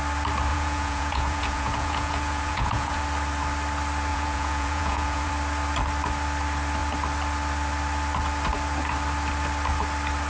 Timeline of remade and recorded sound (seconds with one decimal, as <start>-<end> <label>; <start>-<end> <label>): 0.0-0.5 recorded; 0.5-3.0 remade; 3.0-4.1 recorded; 4.1-5.3 remade; 5.3-10.3 recorded